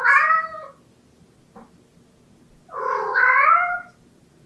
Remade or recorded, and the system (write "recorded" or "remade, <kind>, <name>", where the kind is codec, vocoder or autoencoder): recorded